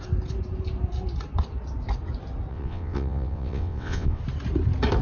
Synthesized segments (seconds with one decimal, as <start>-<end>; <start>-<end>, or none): 2.5-4.2